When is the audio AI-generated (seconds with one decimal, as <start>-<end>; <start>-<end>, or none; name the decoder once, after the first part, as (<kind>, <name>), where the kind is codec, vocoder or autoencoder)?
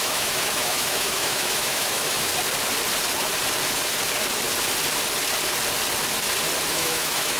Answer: 0.0-2.3 (autoencoder, DAC-VAE); 6.7-7.4